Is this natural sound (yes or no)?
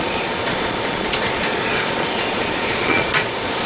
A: no